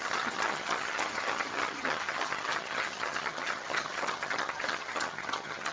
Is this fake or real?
fake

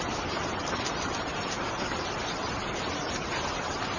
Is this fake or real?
fake